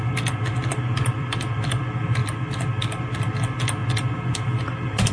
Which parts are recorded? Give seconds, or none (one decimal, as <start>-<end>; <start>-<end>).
0.0-5.1